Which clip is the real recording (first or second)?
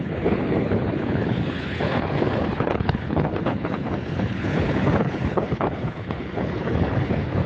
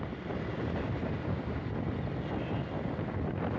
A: second